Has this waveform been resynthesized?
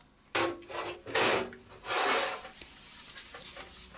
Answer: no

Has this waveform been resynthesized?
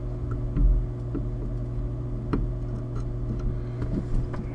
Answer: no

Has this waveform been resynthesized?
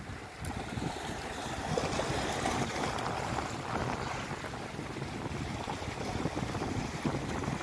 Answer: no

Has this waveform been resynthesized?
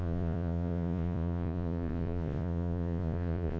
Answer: yes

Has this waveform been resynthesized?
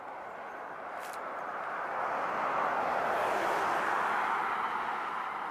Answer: no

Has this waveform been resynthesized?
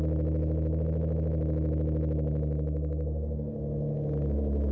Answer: no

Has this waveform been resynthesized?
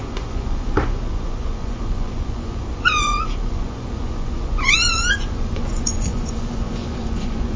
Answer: yes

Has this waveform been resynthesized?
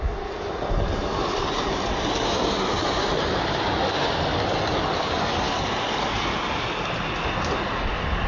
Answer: no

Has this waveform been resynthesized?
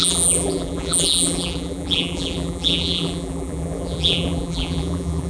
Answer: yes